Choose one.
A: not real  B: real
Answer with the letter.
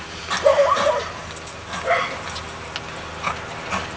B